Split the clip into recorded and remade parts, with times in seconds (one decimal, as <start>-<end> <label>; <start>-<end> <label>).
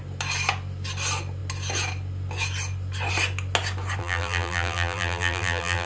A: 0.0-4.0 recorded; 4.0-5.9 remade